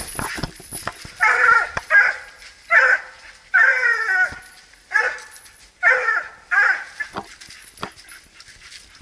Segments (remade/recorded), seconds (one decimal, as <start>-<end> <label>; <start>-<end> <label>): 0.0-0.9 recorded; 0.9-2.5 remade; 2.5-9.0 recorded

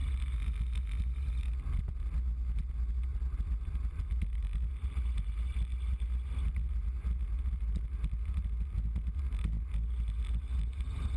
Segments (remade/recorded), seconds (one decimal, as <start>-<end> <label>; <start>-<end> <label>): 0.0-3.1 recorded; 3.1-4.7 remade; 4.7-11.2 recorded

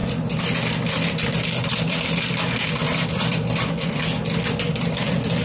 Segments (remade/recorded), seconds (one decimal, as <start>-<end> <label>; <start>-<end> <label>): 0.0-5.4 remade

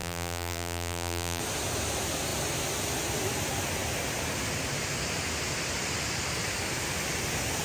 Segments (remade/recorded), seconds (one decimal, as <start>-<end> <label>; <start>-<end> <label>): 0.0-1.4 remade; 1.4-7.6 recorded

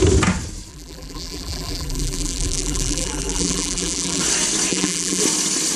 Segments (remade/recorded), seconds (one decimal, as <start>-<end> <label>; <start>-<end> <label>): 0.0-0.7 recorded; 0.7-4.2 remade; 4.2-4.7 recorded; 4.7-5.2 remade; 5.2-5.8 recorded

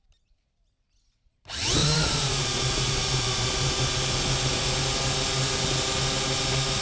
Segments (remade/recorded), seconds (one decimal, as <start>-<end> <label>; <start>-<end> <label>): 0.0-1.8 recorded; 1.8-3.8 remade; 3.8-6.8 recorded